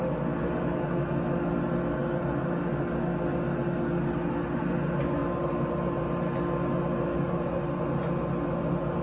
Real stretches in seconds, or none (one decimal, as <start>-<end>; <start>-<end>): 0.0-1.0; 1.5-9.0